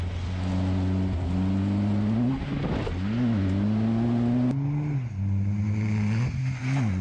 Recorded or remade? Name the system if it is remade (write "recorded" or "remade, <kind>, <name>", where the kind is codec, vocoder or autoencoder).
recorded